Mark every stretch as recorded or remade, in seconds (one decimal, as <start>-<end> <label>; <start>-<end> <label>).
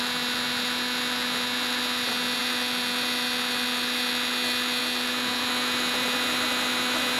0.0-7.2 recorded